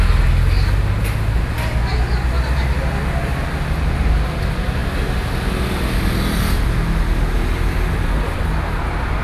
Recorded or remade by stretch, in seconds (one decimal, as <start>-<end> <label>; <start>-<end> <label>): 0.0-9.2 recorded